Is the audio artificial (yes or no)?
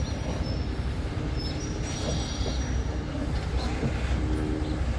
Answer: no